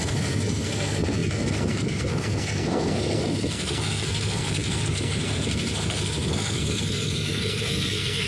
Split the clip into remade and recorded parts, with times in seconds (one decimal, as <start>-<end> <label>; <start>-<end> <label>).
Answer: 0.0-8.3 remade